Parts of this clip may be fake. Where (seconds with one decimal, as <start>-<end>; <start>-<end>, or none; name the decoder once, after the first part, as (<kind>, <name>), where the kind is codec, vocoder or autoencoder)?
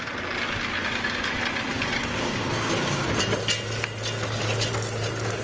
1.7-3.1 (codec, DAC)